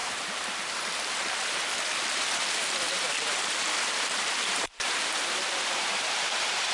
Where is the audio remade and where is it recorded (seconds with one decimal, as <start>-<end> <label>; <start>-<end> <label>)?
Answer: 0.0-0.7 remade; 0.7-2.8 recorded; 2.8-6.7 remade